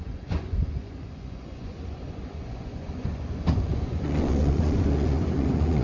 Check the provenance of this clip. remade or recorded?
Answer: remade